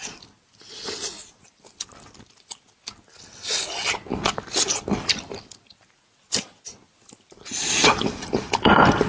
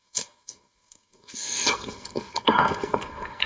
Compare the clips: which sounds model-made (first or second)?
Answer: second